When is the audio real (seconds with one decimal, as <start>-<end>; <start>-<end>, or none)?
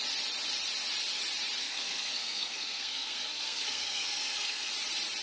0.0-1.6; 4.7-5.2